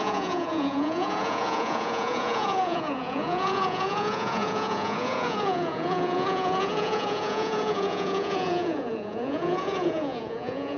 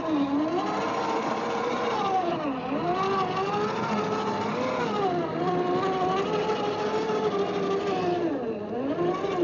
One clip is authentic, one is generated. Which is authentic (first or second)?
second